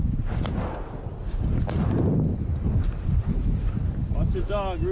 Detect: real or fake real